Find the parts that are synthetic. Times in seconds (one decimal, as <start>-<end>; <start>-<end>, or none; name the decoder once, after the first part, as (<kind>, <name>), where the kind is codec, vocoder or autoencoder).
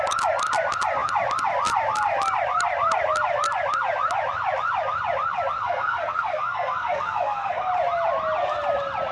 5.6-7.7 (codec, SNAC)